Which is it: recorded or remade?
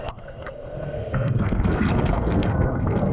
remade